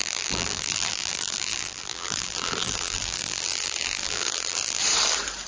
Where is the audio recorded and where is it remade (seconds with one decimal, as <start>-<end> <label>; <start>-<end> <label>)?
0.0-4.8 remade; 4.8-5.5 recorded